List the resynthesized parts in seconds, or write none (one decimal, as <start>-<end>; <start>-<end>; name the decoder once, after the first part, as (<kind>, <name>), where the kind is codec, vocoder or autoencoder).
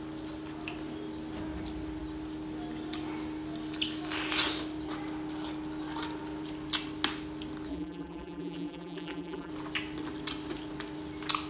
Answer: 7.7-9.5 (vocoder, BigVGAN v2)